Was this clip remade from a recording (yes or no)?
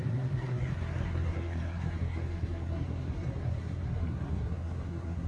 yes